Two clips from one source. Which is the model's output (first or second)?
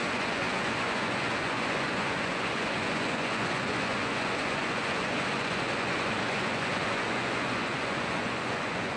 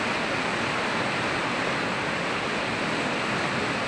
first